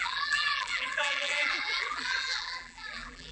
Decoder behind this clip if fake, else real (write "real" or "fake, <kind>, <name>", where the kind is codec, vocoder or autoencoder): fake, vocoder, BigVGAN v2